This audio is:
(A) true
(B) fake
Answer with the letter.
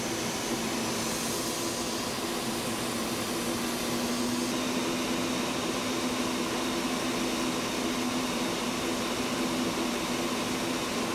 A